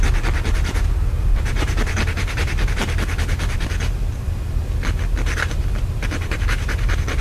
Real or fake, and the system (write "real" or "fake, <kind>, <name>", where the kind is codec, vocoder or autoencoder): real